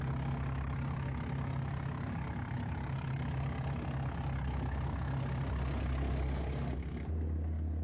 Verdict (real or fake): real